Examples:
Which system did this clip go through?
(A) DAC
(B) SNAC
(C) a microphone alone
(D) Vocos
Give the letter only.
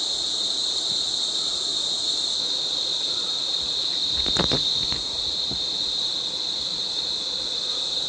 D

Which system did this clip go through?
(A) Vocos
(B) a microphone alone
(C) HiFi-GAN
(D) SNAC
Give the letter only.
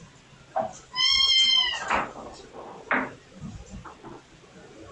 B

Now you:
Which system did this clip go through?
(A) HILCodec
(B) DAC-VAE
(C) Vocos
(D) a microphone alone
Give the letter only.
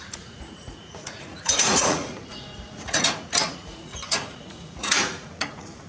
C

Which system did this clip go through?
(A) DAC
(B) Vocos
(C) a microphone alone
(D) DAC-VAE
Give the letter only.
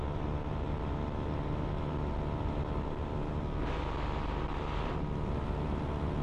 C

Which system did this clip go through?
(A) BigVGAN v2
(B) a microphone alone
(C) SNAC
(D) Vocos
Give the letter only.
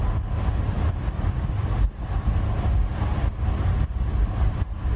B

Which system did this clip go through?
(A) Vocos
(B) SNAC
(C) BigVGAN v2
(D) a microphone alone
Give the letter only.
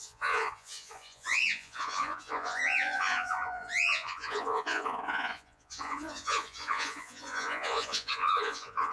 A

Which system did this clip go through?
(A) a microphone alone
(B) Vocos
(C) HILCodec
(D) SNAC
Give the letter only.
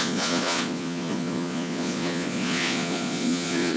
B